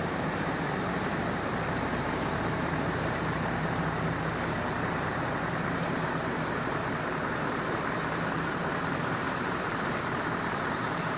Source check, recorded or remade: remade